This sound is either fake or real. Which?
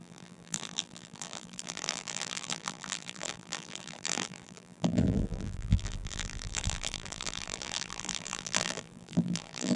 fake